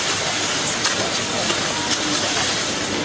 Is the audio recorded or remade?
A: recorded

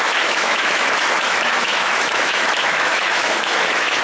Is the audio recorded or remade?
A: remade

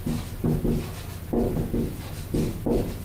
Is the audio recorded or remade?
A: recorded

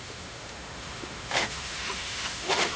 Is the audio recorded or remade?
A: remade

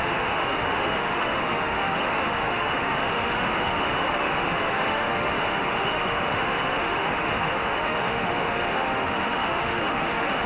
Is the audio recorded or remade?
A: remade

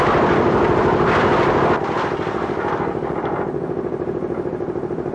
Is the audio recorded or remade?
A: recorded